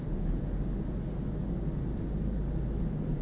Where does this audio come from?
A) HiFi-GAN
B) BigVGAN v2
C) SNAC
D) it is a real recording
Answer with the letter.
D